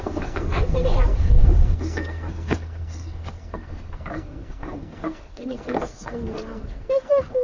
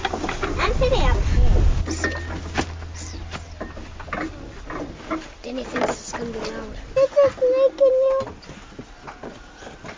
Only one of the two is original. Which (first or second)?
second